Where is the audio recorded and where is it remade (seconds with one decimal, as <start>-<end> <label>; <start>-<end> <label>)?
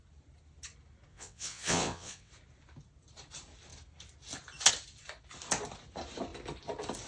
0.0-1.1 recorded; 1.1-2.3 remade; 2.3-7.1 recorded